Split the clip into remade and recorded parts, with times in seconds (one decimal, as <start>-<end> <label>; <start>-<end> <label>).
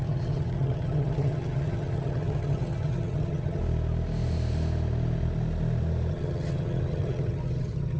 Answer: 0.0-3.6 remade; 3.6-6.1 recorded; 6.1-8.0 remade